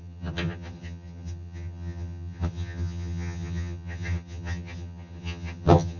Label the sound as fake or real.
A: fake